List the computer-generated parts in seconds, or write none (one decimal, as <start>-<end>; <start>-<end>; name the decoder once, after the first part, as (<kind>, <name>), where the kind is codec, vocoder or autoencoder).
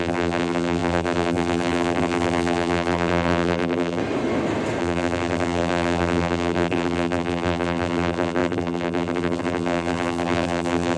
0.0-4.0 (vocoder, BigVGAN v2); 4.8-11.0